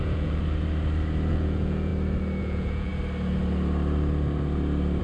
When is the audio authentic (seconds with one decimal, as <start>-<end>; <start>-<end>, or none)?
0.4-1.3; 1.9-2.4; 2.9-5.0